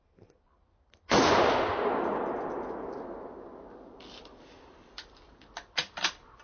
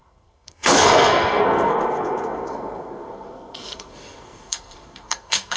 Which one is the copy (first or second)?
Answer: second